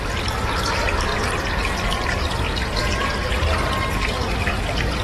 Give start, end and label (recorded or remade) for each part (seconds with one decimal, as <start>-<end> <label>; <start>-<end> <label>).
0.0-5.0 recorded

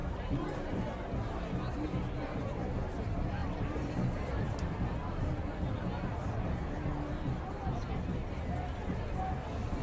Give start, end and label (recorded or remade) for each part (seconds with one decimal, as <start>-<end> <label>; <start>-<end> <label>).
0.0-0.8 remade; 0.8-3.4 recorded; 3.4-3.9 remade; 3.9-4.3 recorded; 4.3-5.3 remade; 5.3-7.7 recorded; 7.7-8.4 remade; 8.4-9.8 recorded

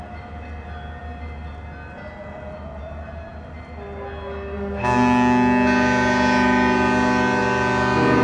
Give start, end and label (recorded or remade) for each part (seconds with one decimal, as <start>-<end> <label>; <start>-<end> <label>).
0.0-8.2 recorded